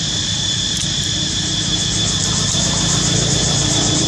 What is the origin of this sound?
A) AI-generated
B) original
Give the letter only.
A